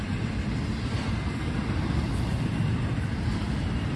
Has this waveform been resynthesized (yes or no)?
no